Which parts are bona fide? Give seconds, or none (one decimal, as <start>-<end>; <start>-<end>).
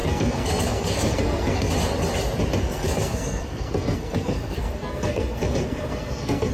1.7-2.6